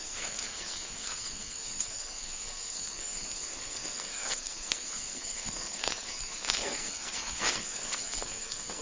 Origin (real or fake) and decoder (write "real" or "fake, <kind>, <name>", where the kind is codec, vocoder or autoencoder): fake, codec, SNAC